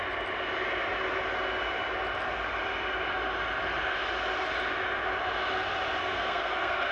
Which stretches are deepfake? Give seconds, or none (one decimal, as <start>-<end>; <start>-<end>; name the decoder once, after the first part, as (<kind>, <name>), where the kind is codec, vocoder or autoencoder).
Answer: 6.0-6.9 (codec, SNAC)